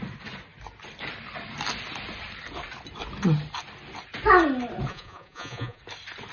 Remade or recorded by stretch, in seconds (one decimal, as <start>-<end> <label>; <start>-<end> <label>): 0.0-4.9 recorded; 4.9-5.8 remade; 5.8-6.3 recorded